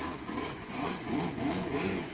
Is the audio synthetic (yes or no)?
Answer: yes